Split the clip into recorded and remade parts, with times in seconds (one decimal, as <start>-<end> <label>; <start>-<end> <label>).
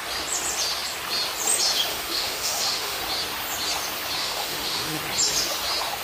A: 0.0-1.9 recorded; 1.9-3.0 remade; 3.0-4.2 recorded; 4.2-5.0 remade; 5.0-6.0 recorded